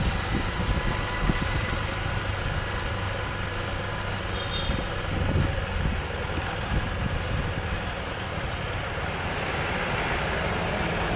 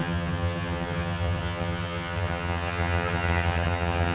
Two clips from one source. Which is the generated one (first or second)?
second